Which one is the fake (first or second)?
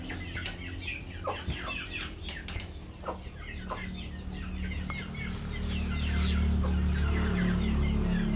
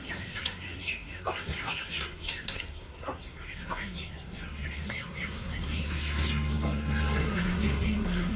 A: second